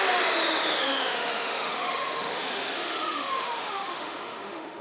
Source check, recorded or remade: remade